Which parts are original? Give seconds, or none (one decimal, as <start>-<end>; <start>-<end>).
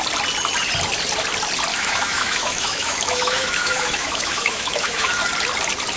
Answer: 0.0-1.7; 5.2-6.0